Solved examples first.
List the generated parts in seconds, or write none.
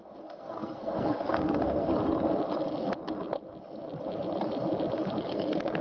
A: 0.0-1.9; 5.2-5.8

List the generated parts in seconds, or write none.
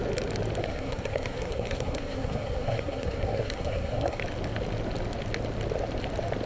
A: 0.6-4.2